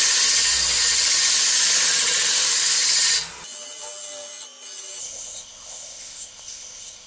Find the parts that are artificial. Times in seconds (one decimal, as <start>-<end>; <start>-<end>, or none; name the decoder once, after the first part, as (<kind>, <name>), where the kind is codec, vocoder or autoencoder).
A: 5.0-7.1 (codec, ZipCodec)

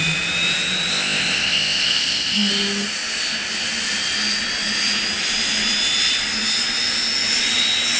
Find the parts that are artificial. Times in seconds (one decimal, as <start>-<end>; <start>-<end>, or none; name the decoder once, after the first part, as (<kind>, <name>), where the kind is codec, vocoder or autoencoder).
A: 0.9-2.5 (codec, ZipCodec)

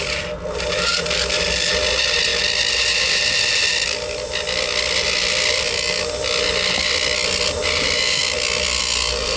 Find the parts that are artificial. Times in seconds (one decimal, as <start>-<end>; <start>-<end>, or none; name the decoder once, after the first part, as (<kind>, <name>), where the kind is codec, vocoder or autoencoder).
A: none

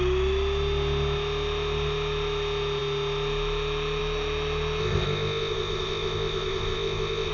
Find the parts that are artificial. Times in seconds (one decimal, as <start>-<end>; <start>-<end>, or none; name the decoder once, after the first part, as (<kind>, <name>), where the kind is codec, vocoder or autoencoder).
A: 4.8-7.3 (codec, ZipCodec)

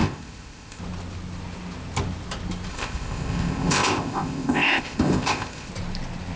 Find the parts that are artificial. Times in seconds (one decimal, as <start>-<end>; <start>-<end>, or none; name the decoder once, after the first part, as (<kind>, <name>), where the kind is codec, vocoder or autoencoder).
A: 0.0-0.8 (codec, ZipCodec); 2.7-5.7

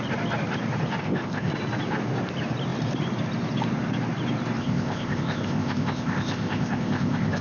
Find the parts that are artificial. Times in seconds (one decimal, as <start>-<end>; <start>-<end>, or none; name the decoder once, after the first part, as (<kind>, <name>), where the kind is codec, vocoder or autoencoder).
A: 1.0-1.5 (codec, ZipCodec); 4.6-7.4

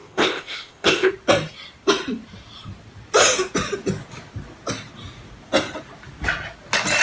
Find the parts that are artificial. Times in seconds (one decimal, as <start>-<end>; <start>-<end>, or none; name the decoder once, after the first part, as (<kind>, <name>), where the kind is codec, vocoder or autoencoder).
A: 0.0-1.1 (codec, ZipCodec)

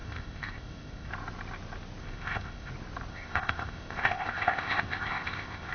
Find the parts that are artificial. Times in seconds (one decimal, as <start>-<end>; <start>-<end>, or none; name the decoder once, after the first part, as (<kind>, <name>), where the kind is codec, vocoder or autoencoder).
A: 0.0-1.1 (codec, ZipCodec); 2.0-2.7; 3.1-5.7